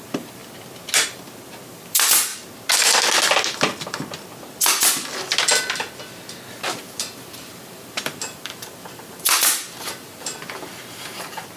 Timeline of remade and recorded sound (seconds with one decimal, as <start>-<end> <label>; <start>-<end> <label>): 0.0-0.4 remade; 0.4-1.7 recorded; 1.7-2.3 remade; 2.3-6.5 recorded; 6.5-11.6 remade